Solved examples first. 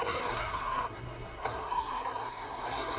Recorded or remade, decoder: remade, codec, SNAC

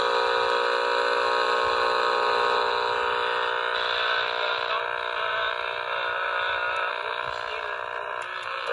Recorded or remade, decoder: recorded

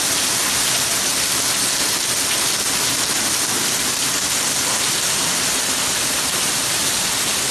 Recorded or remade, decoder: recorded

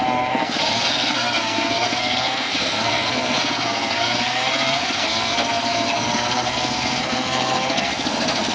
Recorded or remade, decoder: remade, codec, SNAC